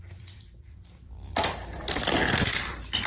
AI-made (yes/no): yes